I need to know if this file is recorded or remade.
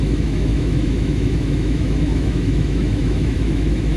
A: remade